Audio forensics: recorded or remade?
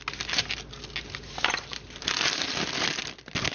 recorded